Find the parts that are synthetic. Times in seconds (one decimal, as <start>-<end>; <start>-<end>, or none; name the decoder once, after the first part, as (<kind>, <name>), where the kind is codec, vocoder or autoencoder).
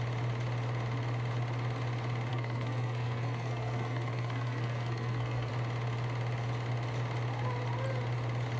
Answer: 2.3-5.5 (codec, SNAC)